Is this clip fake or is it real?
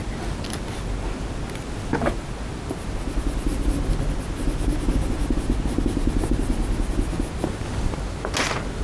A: real